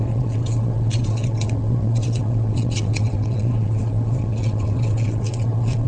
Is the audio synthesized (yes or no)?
yes